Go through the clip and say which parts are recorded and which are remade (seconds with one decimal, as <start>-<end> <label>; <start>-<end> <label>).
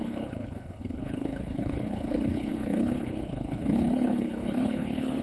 0.0-5.2 remade